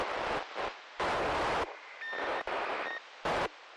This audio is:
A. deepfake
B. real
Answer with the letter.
B